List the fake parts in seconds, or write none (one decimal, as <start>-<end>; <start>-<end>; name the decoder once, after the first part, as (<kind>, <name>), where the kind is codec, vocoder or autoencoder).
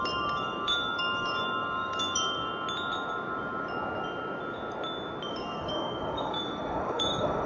0.0-2.5 (codec, DAC); 5.3-7.5